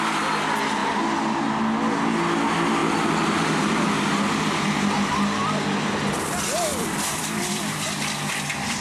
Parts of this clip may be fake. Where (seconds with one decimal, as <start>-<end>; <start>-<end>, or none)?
0.8-1.6; 6.7-8.3